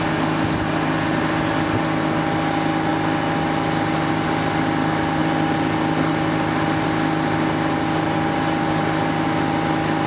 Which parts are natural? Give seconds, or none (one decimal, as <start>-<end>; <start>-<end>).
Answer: 0.0-10.1